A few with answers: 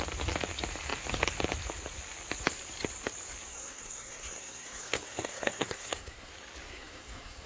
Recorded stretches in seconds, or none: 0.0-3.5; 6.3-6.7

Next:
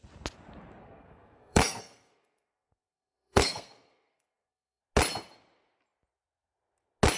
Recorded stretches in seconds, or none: 0.0-0.8; 4.8-7.2

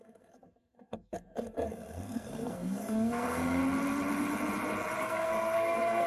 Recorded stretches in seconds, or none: 3.6-5.0

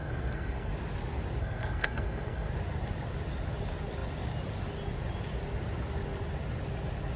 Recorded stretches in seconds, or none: 0.7-1.4; 2.5-7.2

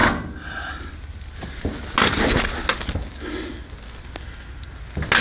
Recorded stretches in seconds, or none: 0.0-5.2

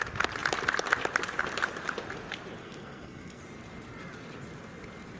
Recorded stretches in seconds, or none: 0.0-2.6; 3.4-5.2